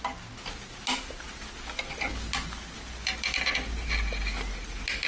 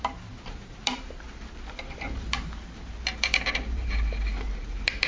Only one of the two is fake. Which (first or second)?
second